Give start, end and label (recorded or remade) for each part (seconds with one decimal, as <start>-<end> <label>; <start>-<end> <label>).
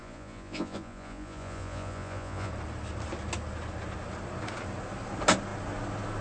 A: 0.0-2.5 remade; 2.5-6.2 recorded